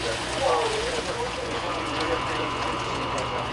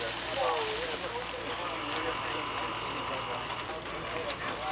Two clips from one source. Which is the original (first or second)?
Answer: second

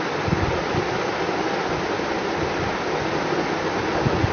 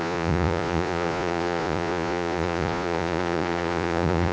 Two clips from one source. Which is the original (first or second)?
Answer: first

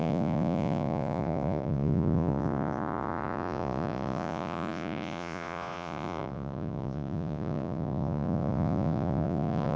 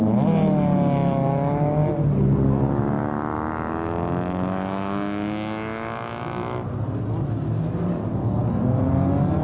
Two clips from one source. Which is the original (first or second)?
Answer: second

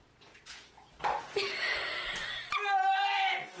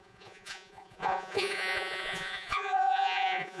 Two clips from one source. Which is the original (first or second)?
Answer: first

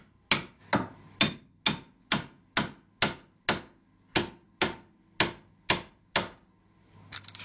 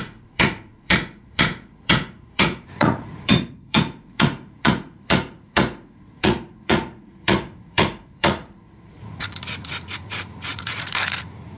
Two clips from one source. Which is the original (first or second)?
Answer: first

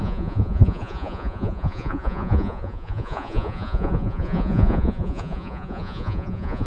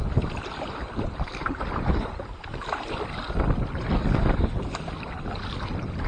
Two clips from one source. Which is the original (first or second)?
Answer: second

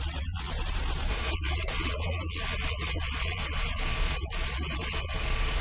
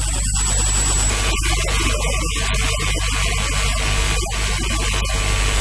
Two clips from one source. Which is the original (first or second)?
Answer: second